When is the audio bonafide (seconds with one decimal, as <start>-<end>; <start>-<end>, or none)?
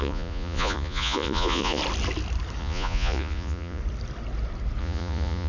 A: 1.8-2.6; 3.8-4.8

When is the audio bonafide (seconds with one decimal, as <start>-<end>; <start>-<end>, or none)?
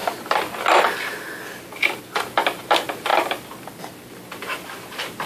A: 0.0-5.3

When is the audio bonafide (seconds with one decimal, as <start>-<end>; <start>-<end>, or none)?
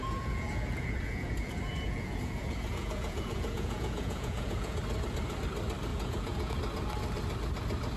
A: 4.8-5.9; 6.5-8.0